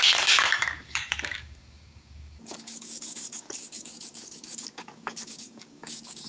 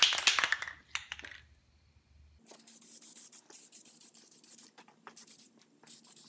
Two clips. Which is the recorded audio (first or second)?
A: second